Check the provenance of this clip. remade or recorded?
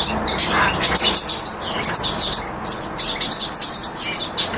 recorded